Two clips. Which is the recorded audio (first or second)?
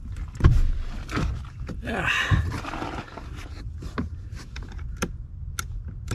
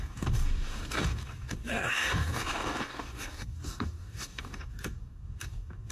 first